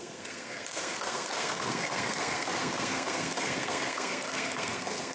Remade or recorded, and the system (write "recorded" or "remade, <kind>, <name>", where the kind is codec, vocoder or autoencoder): remade, codec, SNAC